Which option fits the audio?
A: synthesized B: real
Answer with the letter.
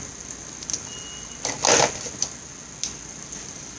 B